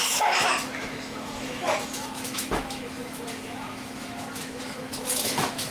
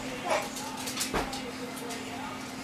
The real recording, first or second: second